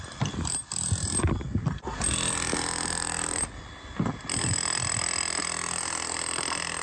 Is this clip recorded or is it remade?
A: recorded